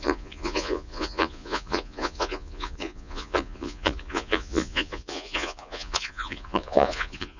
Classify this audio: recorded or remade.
remade